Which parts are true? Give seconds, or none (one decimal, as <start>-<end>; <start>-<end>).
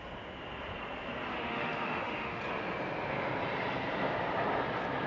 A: 0.0-1.3; 2.4-5.1